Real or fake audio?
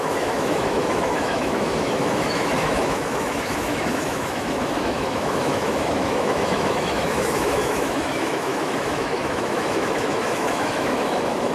fake